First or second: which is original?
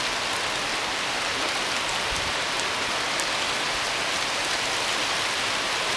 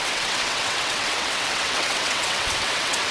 first